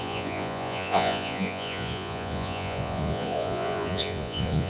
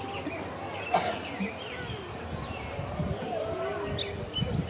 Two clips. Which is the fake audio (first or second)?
first